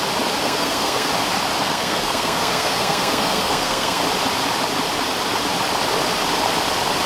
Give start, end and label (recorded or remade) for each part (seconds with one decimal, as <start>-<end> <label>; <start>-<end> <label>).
0.0-0.4 recorded; 0.4-1.1 remade; 1.1-1.6 recorded; 1.6-4.0 remade; 4.0-7.1 recorded